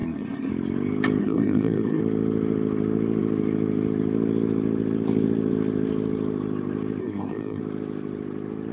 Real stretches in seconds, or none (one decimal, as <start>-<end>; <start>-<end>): 0.5-1.2; 2.0-7.0; 7.6-8.7